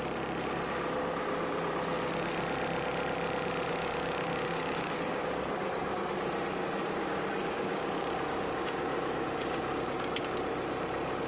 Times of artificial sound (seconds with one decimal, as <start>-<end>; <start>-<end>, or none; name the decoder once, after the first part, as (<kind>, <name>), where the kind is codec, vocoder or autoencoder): 3.7-6.1 (codec, DAC); 6.6-10.3